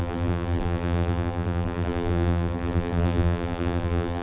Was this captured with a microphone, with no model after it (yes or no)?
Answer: no